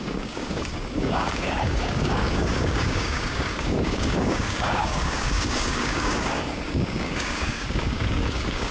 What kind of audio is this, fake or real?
fake